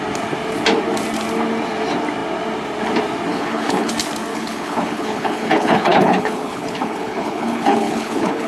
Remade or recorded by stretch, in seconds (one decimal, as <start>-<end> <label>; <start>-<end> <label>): 0.0-3.3 recorded; 3.3-3.9 remade; 3.9-4.3 recorded; 4.3-8.5 remade